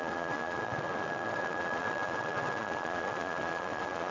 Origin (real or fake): fake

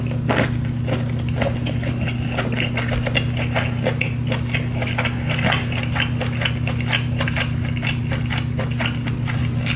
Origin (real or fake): real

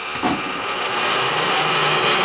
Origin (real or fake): real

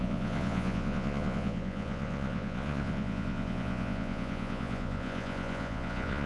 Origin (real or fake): fake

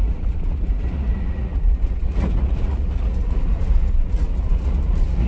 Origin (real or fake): fake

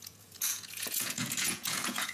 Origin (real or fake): fake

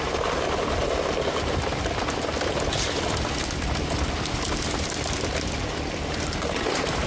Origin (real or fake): real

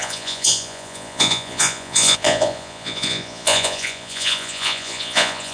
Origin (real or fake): fake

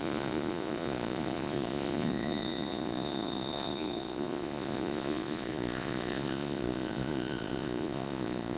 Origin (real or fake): fake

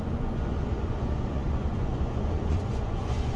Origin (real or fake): fake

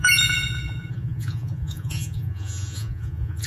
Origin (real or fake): fake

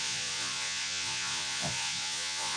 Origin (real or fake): fake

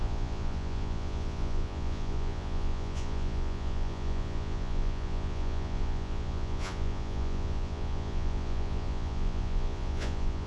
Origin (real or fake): fake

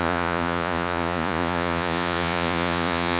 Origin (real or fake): fake